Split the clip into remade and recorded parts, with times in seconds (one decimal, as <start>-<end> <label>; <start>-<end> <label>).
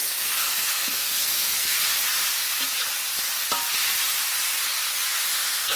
0.0-1.8 remade; 1.8-5.3 recorded; 5.3-5.8 remade